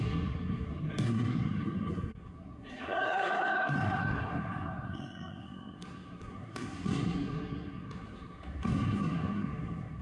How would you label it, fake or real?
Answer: fake